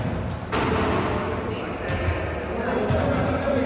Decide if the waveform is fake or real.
real